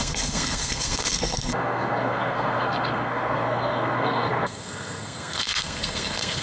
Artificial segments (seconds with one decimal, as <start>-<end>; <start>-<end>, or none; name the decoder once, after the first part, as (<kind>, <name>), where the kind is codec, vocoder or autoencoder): 0.0-6.4 (codec, SNAC)